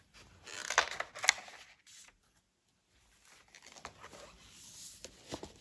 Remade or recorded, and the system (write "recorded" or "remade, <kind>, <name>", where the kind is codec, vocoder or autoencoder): recorded